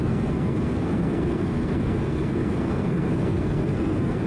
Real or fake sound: fake